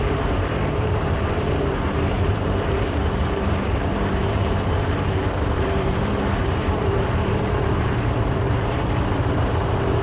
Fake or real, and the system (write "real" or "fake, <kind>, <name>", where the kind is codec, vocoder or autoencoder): fake, vocoder, BigVGAN v2